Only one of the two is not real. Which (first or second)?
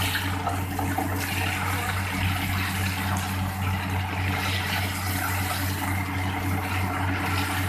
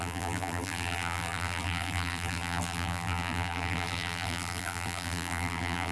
second